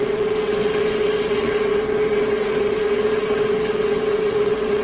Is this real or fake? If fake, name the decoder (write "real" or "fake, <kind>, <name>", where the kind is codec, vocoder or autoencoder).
fake, vocoder, WaveNeXt